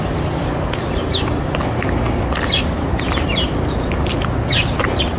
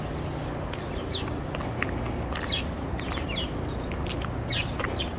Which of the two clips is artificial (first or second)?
first